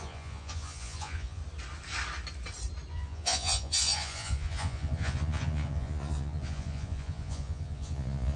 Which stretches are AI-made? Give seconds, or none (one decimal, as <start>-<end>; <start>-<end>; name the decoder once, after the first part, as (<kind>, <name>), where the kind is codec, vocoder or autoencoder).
0.0-1.4 (vocoder, Vocos); 2.9-8.4